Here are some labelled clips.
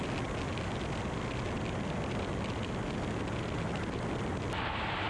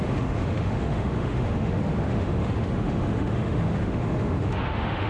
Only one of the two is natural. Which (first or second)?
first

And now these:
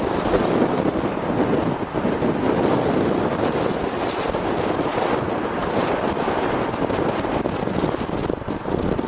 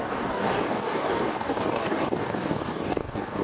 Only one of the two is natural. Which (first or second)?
first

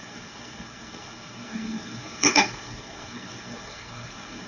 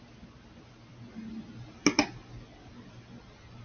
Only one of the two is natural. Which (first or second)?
second